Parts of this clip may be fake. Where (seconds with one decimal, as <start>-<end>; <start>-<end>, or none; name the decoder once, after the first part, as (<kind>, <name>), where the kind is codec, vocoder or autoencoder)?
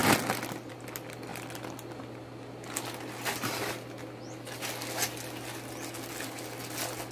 none